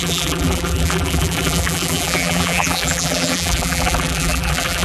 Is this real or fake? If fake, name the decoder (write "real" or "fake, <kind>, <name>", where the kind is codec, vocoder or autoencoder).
fake, vocoder, BigVGAN v2